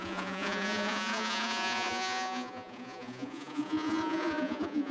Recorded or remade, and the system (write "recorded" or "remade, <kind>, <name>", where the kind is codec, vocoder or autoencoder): remade, vocoder, Vocos